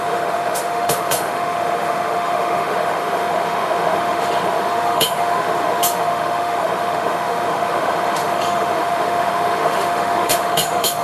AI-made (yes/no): yes